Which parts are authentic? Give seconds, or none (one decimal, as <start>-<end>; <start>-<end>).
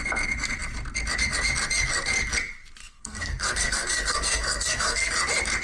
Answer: 0.0-2.8; 5.1-5.6